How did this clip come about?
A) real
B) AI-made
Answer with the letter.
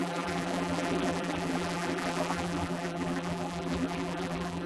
B